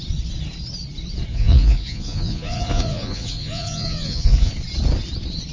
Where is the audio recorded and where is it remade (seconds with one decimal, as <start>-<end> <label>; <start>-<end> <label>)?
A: 0.0-1.3 recorded; 1.3-4.5 remade; 4.5-5.5 recorded